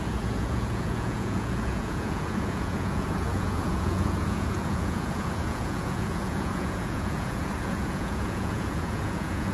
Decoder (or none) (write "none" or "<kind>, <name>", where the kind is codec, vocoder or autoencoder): vocoder, Vocos